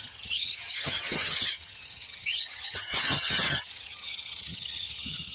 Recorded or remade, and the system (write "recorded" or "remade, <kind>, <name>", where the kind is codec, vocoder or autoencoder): remade, vocoder, HiFi-GAN